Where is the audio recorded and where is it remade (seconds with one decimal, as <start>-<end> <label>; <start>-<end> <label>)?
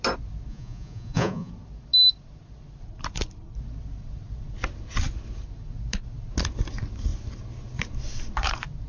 0.0-0.5 recorded; 0.5-1.5 remade; 1.5-8.9 recorded